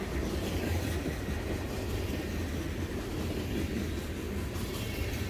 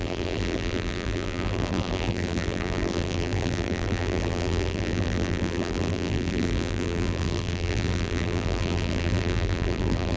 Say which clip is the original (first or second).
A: first